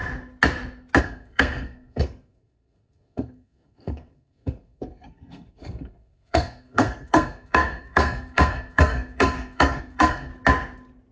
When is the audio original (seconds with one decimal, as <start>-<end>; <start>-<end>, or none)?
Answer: 0.0-1.0; 10.3-11.1

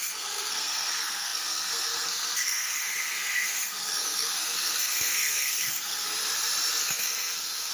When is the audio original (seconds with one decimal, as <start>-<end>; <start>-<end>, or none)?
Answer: 6.1-6.8